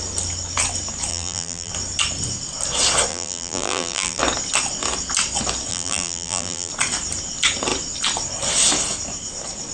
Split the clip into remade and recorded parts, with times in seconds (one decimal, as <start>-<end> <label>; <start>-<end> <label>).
0.0-1.1 recorded; 1.1-1.7 remade; 1.7-3.1 recorded; 3.1-4.2 remade; 4.2-5.7 recorded; 5.7-6.7 remade; 6.7-9.7 recorded